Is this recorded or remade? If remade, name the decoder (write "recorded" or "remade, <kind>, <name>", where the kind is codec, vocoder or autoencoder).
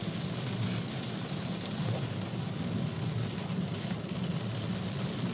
recorded